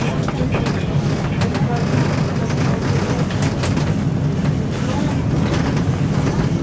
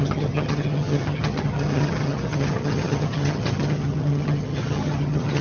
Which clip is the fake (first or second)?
second